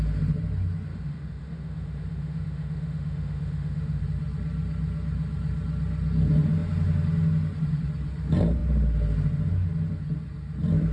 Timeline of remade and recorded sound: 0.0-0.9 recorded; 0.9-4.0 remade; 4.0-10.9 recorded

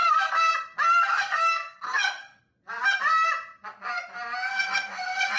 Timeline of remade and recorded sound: 0.0-0.5 remade; 0.5-1.1 recorded; 1.1-2.4 remade; 2.4-4.5 recorded; 4.5-5.4 remade

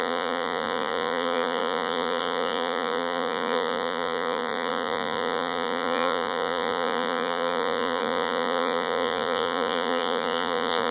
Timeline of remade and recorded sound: 0.0-10.9 remade

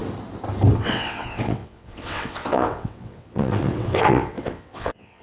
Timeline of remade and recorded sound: 0.0-0.7 recorded; 0.7-5.2 remade

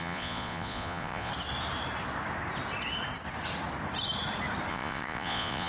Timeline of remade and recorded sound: 0.0-1.3 remade; 1.3-4.7 recorded; 4.7-5.7 remade

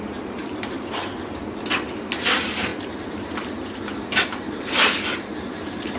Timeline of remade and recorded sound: 0.0-1.4 remade; 1.4-2.0 recorded; 2.0-6.0 remade